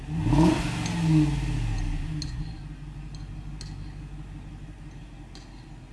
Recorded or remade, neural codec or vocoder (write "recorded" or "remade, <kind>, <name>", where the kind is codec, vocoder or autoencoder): recorded